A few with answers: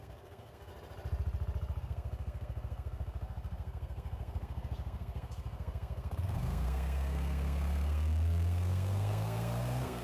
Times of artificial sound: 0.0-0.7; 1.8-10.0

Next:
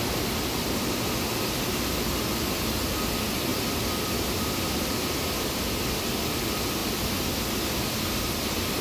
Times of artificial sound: 3.5-5.7; 6.8-7.4

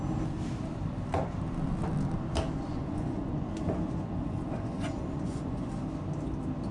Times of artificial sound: 2.7-5.7